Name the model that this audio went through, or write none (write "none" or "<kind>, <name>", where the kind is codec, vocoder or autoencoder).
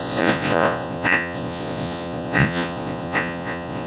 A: vocoder, Vocos